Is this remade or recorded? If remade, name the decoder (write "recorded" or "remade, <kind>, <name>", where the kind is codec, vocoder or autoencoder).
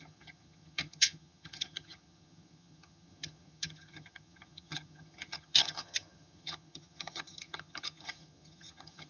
remade, vocoder, HiFi-GAN